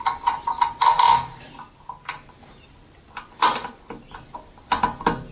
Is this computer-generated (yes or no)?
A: no